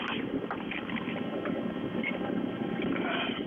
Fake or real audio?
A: real